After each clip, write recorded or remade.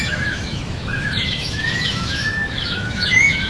remade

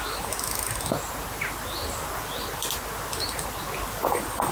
recorded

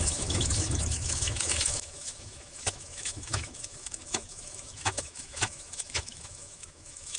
remade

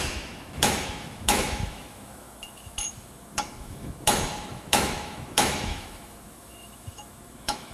remade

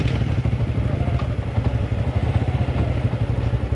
recorded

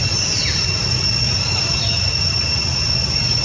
recorded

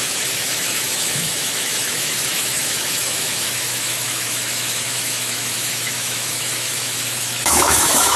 remade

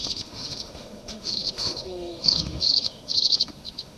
remade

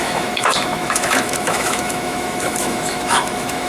remade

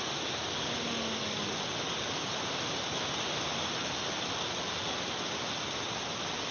recorded